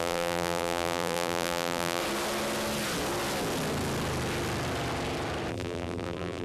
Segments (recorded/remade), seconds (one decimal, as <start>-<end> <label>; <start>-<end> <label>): 0.0-2.0 remade; 2.0-5.5 recorded; 5.5-6.4 remade